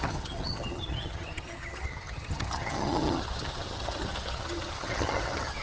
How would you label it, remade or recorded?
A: remade